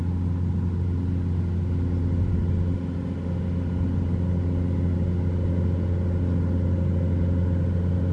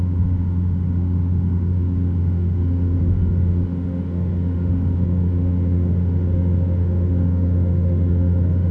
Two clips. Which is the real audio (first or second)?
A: first